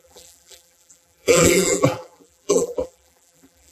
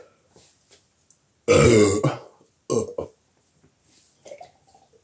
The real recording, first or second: second